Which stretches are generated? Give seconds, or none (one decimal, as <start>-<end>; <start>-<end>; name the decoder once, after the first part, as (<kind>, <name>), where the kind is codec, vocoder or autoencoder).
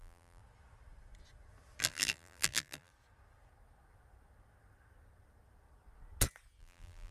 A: 0.0-0.4 (vocoder, BigVGAN v2); 1.8-2.9; 6.6-7.1